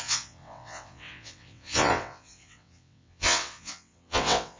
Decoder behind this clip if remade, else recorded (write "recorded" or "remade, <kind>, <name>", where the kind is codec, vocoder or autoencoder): remade, vocoder, WaveNeXt